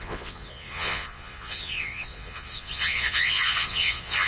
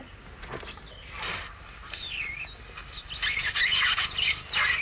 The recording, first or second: second